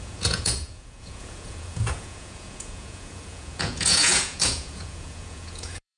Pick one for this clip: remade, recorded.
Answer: remade